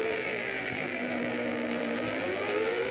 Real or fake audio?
fake